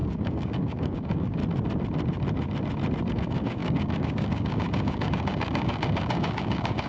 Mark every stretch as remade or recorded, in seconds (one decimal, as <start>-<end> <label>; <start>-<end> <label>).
0.0-1.4 remade; 1.4-3.1 recorded; 3.1-6.9 remade